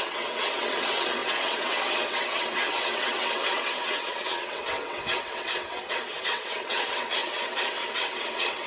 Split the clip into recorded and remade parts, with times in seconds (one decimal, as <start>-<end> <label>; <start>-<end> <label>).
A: 0.0-8.7 remade